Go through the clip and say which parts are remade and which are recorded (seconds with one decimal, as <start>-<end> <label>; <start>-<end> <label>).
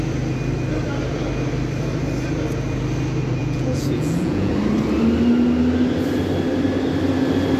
0.0-3.4 recorded; 3.4-4.5 remade; 4.5-7.6 recorded